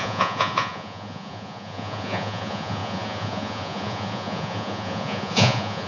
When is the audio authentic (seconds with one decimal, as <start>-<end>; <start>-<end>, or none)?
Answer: none

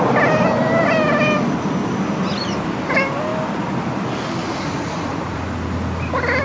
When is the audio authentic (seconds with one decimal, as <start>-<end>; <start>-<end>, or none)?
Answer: 0.0-4.4; 5.4-6.4

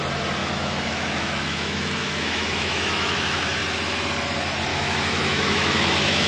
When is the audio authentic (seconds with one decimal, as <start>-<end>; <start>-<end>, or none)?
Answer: 0.0-0.4; 3.6-4.7

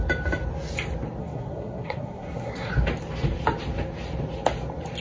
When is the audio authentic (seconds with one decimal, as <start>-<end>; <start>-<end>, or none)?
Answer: 0.0-1.2; 2.7-5.0

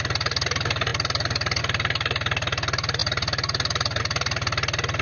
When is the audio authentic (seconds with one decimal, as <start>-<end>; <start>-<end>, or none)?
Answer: 0.0-5.0

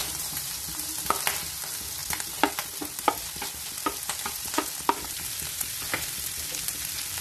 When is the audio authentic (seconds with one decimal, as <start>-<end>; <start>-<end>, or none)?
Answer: 0.6-7.2